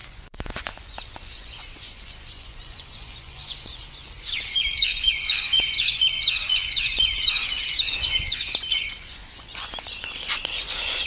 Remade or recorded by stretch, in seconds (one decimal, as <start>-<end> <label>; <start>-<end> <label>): 0.0-11.1 remade